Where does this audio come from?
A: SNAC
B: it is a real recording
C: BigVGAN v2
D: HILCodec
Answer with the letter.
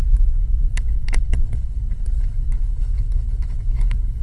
D